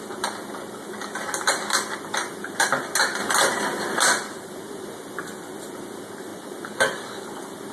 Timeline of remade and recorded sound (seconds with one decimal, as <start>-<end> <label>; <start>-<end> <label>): 0.0-7.7 recorded